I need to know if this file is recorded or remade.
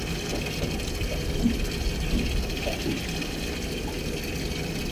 recorded